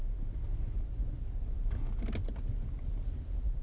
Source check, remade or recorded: recorded